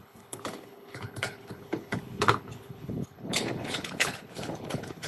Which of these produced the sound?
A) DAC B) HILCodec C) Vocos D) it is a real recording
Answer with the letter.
B